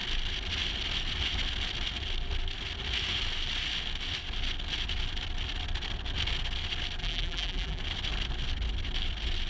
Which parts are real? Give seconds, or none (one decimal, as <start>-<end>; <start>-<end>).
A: 0.0-7.0; 7.8-9.5